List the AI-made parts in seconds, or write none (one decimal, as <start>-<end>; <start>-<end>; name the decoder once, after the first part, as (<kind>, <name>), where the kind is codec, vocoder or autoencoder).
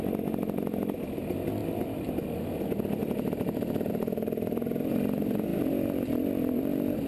1.6-2.1 (vocoder, BigVGAN v2); 3.0-3.9; 5.5-7.1